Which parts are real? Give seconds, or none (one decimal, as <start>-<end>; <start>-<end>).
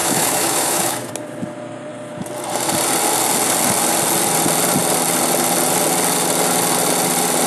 1.1-7.5